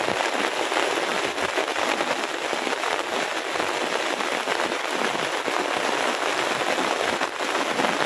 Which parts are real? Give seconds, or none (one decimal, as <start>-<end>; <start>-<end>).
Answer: 0.0-1.1; 2.0-8.1